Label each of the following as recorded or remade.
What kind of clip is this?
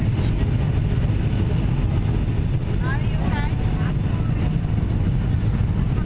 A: recorded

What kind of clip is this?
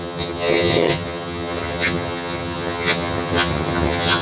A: remade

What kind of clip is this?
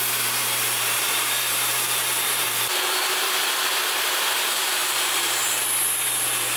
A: remade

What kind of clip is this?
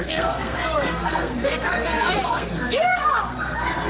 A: remade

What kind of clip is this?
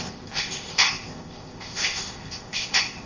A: remade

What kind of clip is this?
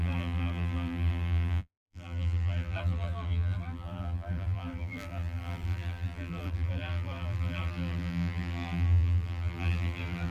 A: remade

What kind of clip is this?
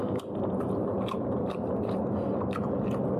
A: recorded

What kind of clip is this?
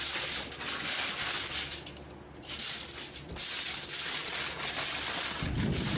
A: recorded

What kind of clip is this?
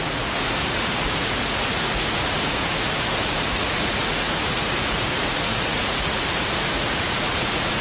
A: remade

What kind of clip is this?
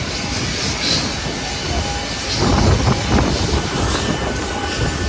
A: recorded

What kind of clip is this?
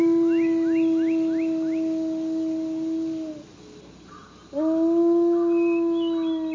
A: recorded